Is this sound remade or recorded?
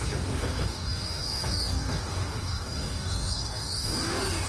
remade